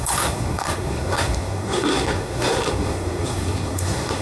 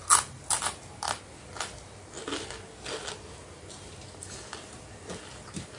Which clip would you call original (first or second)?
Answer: second